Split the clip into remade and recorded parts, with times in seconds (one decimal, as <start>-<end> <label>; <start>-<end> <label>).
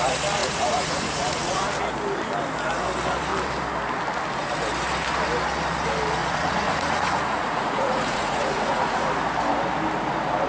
0.0-0.4 recorded; 0.4-1.8 remade; 1.8-6.2 recorded; 6.2-9.1 remade; 9.1-10.5 recorded